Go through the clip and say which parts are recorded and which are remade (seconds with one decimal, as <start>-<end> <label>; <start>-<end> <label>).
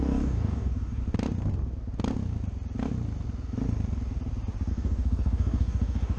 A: 0.0-1.0 remade; 1.0-4.7 recorded; 4.7-6.2 remade